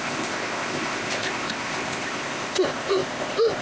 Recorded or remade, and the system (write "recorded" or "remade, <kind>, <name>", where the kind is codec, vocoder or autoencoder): remade, codec, ZipCodec